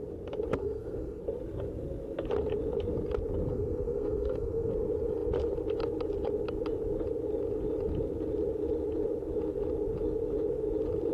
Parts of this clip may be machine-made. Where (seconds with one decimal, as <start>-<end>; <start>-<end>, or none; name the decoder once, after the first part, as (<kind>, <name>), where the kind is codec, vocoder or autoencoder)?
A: 0.6-1.2 (codec, SNAC); 3.5-4.7